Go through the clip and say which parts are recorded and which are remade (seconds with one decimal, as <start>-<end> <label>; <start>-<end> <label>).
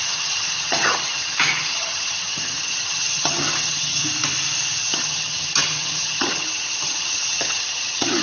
0.0-4.0 remade; 4.0-4.8 recorded; 4.8-8.2 remade